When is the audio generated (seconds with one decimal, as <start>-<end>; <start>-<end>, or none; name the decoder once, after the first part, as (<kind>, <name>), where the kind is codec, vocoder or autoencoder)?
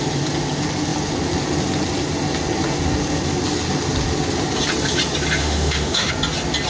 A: 5.4-6.1 (autoencoder, DAC-VAE)